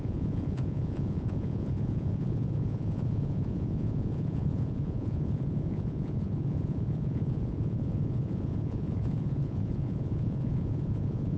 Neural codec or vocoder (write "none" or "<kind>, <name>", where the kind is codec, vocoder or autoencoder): vocoder, Vocos